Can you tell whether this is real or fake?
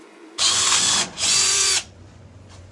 fake